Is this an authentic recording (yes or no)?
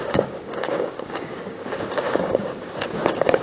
no